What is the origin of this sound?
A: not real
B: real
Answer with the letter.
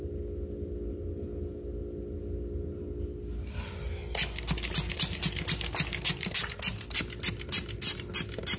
B